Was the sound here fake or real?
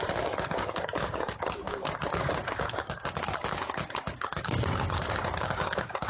fake